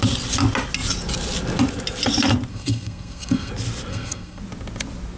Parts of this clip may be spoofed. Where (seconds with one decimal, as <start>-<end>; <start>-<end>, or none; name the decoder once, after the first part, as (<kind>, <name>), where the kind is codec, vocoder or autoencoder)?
2.5-3.5 (codec, SNAC); 3.9-4.4